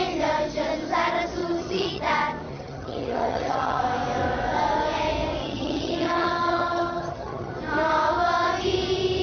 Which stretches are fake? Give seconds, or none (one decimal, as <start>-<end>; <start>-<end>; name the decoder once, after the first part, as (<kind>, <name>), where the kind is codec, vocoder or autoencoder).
1.4-2.0 (vocoder, HiFi-GAN); 2.5-3.8; 5.4-7.6